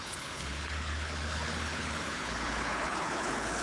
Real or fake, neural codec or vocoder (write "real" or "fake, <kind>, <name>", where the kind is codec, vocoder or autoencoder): fake, codec, HILCodec